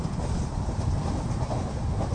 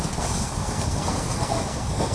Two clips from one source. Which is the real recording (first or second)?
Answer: first